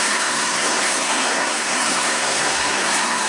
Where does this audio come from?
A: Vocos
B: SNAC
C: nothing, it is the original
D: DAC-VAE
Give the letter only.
B